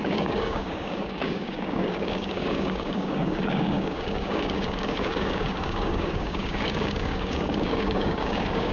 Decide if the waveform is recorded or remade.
remade